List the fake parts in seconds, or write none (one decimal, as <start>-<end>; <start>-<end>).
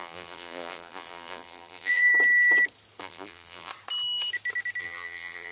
0.0-2.1; 3.0-3.7; 4.8-5.5